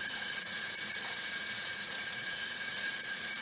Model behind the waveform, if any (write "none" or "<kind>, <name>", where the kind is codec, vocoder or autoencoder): vocoder, Vocos